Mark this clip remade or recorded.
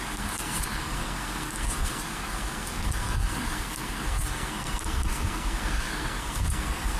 remade